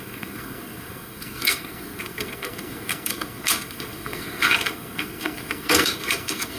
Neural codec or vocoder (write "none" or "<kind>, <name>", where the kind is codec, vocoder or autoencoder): codec, SNAC